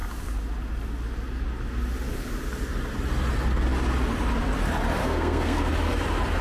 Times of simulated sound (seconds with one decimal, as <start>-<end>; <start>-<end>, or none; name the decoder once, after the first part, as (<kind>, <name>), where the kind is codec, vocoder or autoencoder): 5.0-5.7 (codec, SNAC)